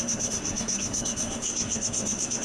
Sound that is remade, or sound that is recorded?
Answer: remade